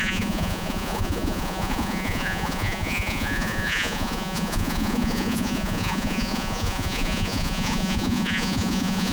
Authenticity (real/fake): fake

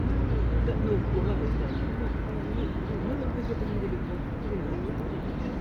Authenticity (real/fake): real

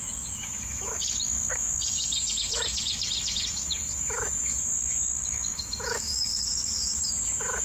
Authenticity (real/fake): fake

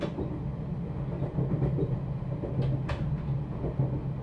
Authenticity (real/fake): real